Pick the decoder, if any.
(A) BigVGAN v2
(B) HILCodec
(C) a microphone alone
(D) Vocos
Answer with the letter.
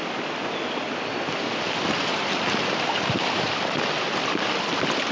C